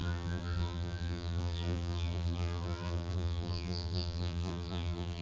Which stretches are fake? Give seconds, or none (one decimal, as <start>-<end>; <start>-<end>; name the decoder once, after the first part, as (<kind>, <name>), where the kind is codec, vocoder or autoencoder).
0.0-5.2 (vocoder, BigVGAN v2)

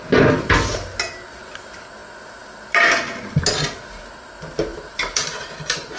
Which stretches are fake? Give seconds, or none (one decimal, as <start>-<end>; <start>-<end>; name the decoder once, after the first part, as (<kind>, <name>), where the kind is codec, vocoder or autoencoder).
4.7-6.0 (vocoder, BigVGAN v2)